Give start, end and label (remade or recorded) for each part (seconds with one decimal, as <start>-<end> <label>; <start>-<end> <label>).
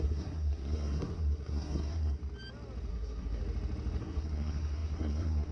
0.0-2.2 remade; 2.2-2.9 recorded; 2.9-3.4 remade; 3.4-4.0 recorded; 4.0-5.5 remade